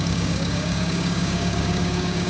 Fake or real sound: fake